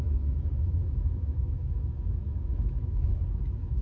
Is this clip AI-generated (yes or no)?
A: yes